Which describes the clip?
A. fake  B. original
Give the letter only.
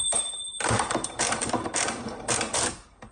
A